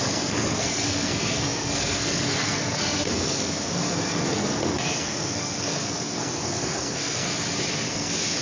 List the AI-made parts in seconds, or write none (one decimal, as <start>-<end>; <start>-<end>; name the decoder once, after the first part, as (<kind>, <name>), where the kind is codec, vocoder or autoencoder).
0.0-7.3 (codec, SNAC); 7.9-8.4